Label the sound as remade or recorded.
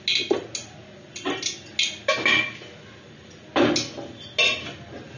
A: recorded